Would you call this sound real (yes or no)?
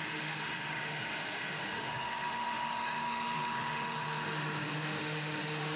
no